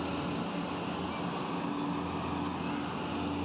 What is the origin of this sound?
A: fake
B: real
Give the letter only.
B